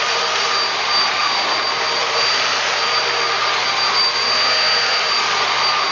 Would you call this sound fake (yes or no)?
no